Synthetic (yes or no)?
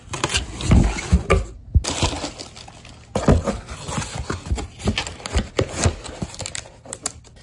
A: no